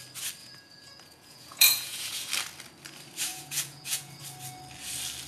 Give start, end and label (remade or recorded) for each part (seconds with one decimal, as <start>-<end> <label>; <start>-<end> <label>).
0.0-0.4 recorded; 0.4-2.3 remade; 2.3-3.3 recorded; 3.3-4.2 remade; 4.2-5.3 recorded